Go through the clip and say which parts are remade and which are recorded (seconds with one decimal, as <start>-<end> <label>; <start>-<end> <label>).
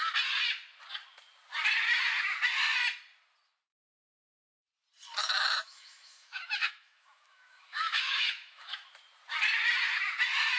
0.0-5.2 recorded; 5.2-8.9 remade; 8.9-10.6 recorded